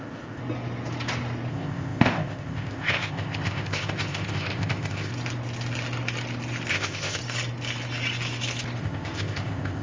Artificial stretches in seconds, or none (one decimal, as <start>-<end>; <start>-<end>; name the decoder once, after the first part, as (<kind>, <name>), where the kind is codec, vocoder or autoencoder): 0.0-0.4 (codec, ZipCodec); 1.5-5.1; 6.7-7.2; 8.8-9.8